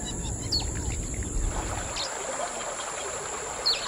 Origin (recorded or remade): remade